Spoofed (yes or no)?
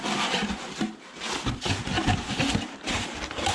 no